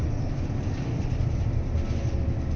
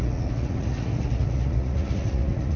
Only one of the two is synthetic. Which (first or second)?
second